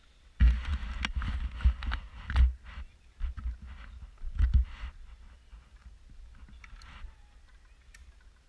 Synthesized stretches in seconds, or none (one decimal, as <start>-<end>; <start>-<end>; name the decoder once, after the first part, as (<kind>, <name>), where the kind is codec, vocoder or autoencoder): none